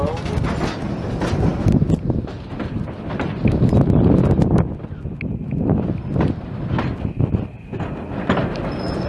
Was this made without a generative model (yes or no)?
yes